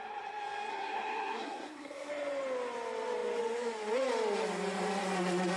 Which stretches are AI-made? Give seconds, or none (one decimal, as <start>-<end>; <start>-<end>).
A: 0.7-2.1